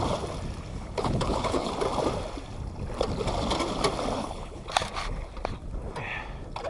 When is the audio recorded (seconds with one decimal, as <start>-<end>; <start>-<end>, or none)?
0.0-0.7; 1.7-4.2; 4.7-6.7

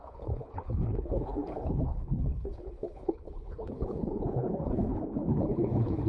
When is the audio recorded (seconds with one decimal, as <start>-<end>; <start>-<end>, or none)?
none

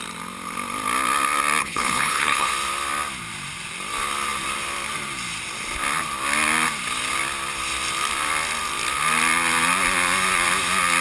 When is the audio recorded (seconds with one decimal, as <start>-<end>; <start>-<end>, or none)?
0.0-1.6; 2.5-11.0

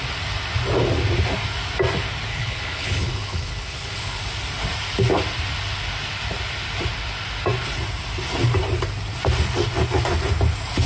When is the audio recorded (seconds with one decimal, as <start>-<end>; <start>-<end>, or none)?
0.0-2.3; 4.2-10.9

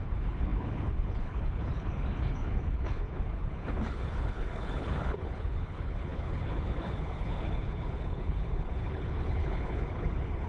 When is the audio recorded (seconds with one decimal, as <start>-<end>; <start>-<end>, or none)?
none

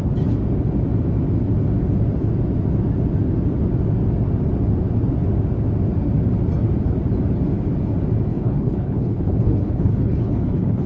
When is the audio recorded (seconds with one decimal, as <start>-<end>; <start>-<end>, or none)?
0.0-8.3

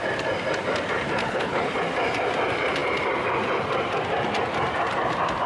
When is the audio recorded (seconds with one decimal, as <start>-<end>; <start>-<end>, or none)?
0.0-1.2; 1.7-5.5

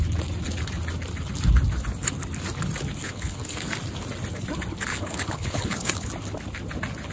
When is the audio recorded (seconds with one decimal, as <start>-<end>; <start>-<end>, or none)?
0.0-3.0; 3.7-4.9; 6.1-7.1